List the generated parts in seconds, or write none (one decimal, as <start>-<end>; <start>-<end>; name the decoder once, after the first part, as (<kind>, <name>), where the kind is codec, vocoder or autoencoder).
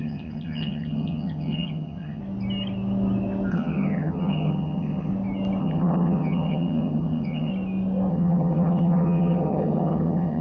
0.0-2.2 (vocoder, HiFi-GAN); 3.5-5.1; 5.6-7.5; 8.1-10.4